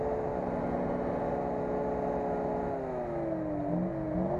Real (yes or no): yes